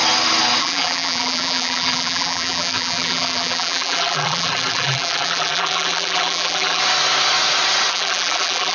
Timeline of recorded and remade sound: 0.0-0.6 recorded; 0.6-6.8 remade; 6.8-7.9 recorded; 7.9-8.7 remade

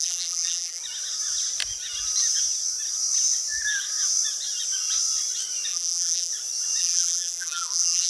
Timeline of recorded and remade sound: 0.0-0.8 remade; 0.8-5.7 recorded; 5.7-6.3 remade; 6.3-6.8 recorded; 6.8-8.1 remade

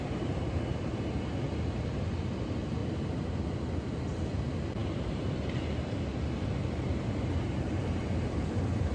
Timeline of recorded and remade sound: 0.0-2.8 remade; 2.8-3.6 recorded; 3.6-8.9 remade